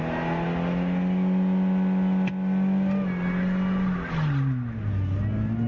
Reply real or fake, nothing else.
real